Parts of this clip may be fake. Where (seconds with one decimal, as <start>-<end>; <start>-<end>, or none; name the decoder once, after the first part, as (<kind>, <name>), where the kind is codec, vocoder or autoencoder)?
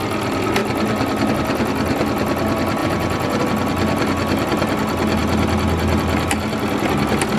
2.8-3.4 (vocoder, Vocos)